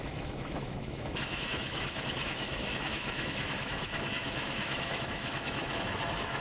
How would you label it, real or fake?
fake